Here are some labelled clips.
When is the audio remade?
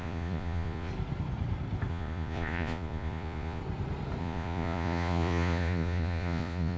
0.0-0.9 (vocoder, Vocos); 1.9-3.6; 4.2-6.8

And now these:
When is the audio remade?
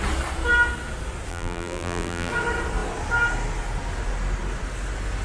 1.3-2.3 (vocoder, BigVGAN v2)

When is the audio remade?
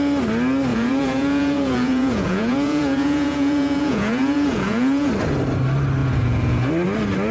0.7-5.1 (vocoder, Vocos); 6.0-6.7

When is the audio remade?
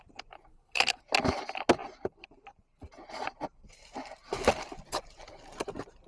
0.5-1.0 (codec, HILCodec)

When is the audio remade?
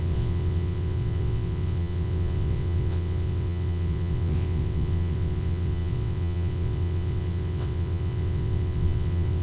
0.0-9.4 (vocoder, WaveNeXt)